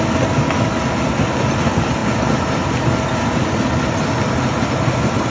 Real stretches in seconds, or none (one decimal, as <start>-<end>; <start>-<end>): 0.0-5.3